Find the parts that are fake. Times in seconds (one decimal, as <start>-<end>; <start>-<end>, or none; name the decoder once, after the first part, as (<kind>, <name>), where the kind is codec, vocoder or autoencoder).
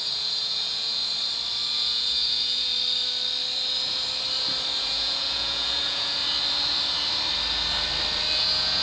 0.0-1.0 (vocoder, Vocos); 1.7-2.7; 4.8-6.2; 8.4-8.8